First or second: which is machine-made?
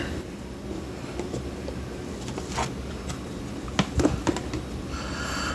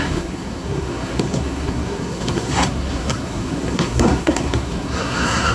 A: second